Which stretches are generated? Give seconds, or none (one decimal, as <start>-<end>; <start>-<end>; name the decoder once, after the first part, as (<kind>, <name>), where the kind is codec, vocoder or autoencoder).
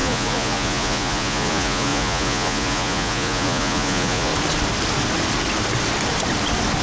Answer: 0.0-4.3 (vocoder, Vocos)